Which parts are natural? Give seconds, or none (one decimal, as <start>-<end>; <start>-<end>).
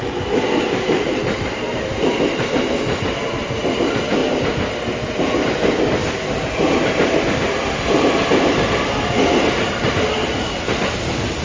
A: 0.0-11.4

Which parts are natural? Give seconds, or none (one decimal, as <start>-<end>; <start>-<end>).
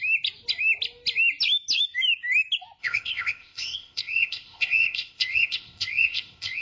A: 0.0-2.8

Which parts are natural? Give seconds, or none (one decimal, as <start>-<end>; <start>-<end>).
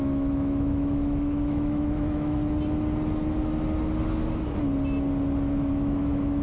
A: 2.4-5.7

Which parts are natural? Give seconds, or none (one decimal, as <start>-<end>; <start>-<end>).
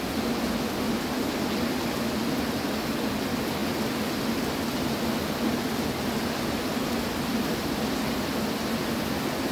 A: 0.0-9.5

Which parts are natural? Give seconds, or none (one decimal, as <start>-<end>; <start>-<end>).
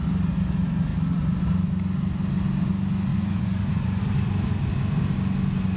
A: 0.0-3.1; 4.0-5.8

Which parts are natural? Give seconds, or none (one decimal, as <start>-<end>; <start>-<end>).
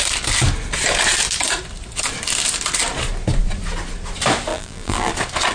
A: 0.0-4.5; 5.1-5.5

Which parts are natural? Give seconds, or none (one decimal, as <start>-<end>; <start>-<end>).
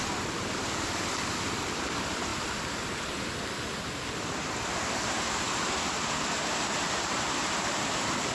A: 0.0-8.3